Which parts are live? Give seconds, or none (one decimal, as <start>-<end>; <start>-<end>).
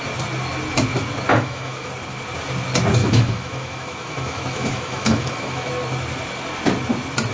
0.0-1.3; 1.9-3.0; 5.7-7.3